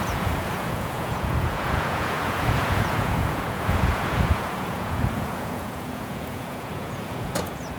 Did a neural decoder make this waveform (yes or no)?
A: yes